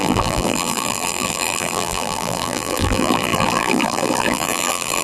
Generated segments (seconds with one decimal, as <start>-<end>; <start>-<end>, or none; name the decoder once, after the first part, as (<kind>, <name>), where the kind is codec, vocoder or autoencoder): 0.0-5.0 (vocoder, BigVGAN v2)